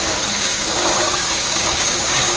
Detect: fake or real fake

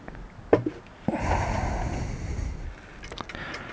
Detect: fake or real real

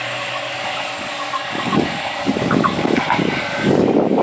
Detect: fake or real fake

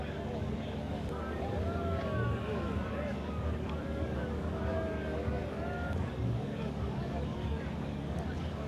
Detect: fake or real fake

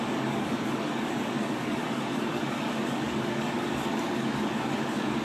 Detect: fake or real fake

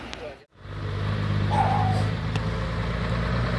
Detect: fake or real real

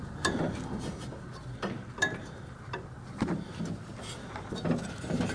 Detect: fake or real real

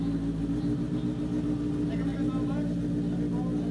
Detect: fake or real real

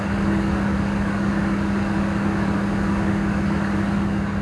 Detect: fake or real fake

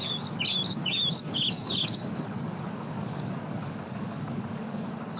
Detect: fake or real fake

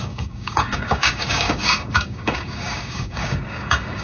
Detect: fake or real fake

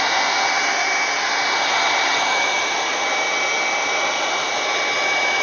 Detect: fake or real real